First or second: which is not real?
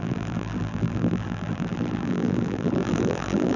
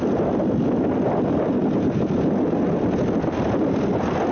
first